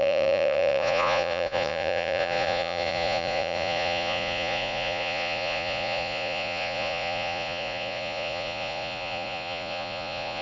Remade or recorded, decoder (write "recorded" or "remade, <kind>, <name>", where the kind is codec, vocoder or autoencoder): remade, vocoder, Vocos